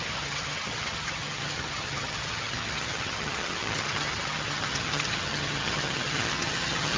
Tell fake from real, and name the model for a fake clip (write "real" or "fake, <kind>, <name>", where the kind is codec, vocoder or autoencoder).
fake, vocoder, HiFi-GAN